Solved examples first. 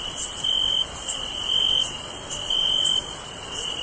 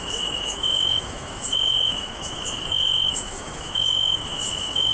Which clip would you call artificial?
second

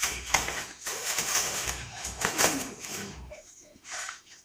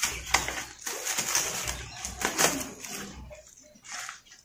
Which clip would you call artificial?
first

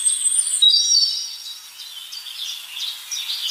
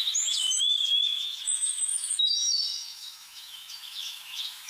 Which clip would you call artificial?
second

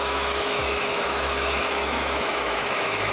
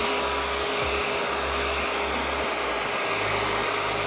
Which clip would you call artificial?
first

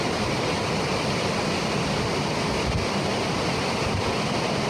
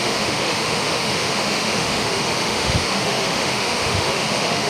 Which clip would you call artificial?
second